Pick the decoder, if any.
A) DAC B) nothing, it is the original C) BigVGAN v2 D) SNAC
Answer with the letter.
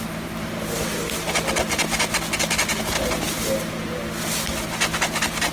B